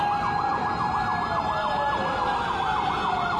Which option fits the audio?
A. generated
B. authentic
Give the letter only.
B